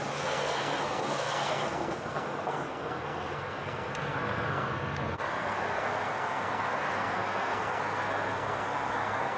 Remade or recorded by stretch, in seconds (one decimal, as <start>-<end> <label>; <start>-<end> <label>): 0.0-9.4 remade